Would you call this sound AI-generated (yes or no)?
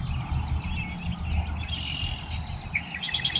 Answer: no